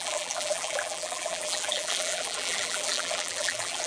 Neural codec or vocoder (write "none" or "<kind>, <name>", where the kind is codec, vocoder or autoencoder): vocoder, BigVGAN v2